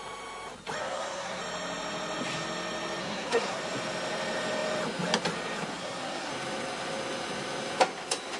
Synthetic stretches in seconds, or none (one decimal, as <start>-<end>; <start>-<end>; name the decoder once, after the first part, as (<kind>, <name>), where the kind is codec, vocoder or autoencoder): 0.8-1.4 (codec, SNAC); 3.0-3.6; 5.7-6.3